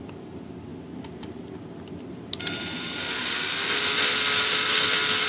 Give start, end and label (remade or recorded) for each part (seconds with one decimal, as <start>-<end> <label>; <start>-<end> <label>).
0.0-5.3 recorded